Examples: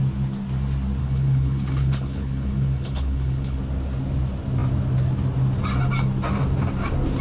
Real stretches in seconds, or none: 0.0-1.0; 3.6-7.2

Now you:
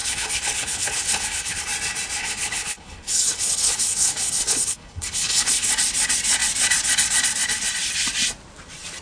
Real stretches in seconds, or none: 1.6-2.2; 5.7-9.0

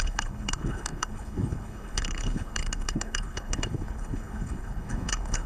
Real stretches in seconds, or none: none